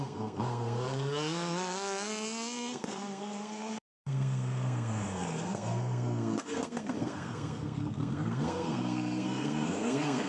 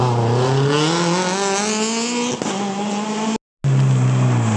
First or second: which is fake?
first